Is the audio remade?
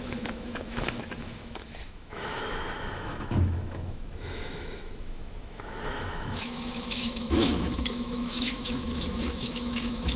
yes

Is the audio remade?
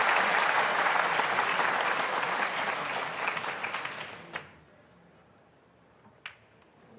yes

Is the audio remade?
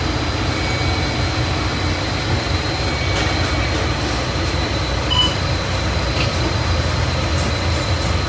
no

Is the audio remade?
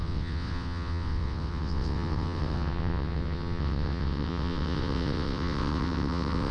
yes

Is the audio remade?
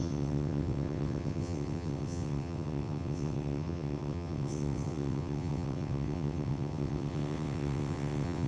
yes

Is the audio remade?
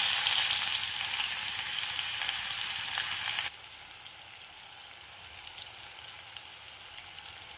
no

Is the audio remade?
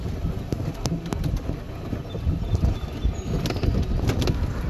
no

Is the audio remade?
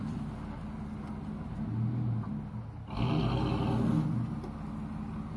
no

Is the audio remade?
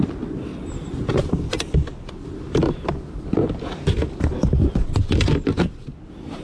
no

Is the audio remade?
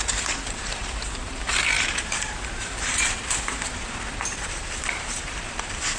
yes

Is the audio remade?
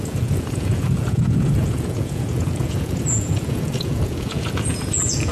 yes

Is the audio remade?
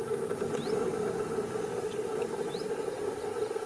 no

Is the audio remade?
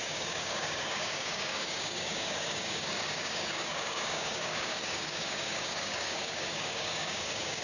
yes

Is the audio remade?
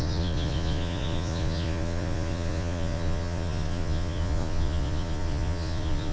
yes